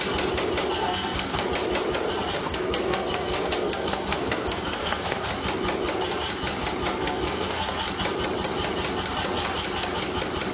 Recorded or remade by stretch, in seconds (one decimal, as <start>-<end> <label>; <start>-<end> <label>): 0.0-0.8 recorded; 0.8-1.5 remade; 1.5-2.5 recorded; 2.5-5.3 remade; 5.3-6.9 recorded; 6.9-7.6 remade; 7.6-10.5 recorded

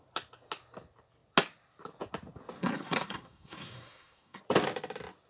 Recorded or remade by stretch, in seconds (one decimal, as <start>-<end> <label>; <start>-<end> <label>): 0.0-2.6 recorded; 2.6-4.4 remade; 4.4-5.3 recorded